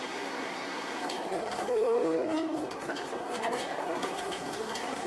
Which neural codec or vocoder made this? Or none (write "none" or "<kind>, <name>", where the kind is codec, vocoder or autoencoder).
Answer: codec, SNAC